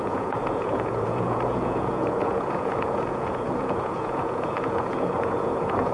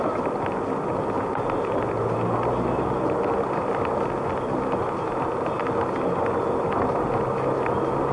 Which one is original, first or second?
second